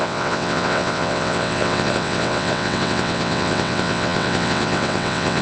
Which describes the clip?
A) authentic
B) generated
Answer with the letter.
B